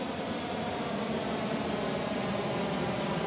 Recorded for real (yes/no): yes